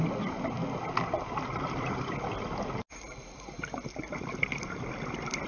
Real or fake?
real